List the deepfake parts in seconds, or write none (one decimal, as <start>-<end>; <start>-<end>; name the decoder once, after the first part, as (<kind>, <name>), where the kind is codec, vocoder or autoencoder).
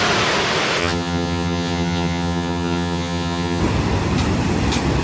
0.8-3.6 (vocoder, HiFi-GAN)